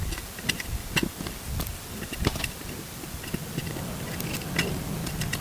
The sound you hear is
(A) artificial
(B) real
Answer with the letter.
B